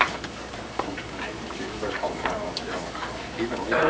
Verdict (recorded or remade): remade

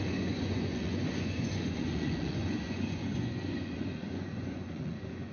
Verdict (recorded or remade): remade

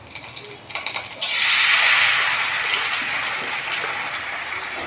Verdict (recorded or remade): recorded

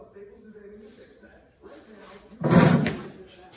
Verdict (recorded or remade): recorded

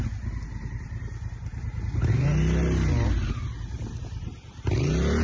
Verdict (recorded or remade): recorded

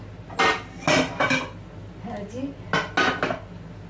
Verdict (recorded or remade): recorded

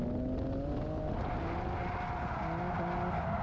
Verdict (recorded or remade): recorded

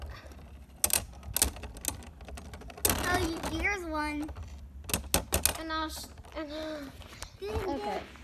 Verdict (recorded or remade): recorded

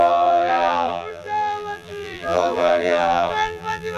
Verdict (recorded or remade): remade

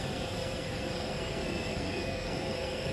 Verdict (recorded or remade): remade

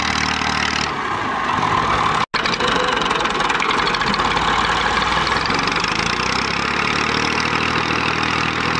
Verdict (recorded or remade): recorded